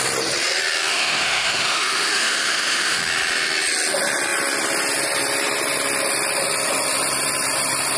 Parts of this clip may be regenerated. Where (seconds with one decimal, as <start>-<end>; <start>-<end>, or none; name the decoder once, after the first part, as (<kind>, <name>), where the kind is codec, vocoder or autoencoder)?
0.9-3.0 (autoencoder, DAC-VAE)